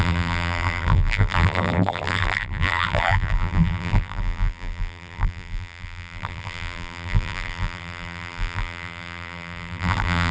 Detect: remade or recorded remade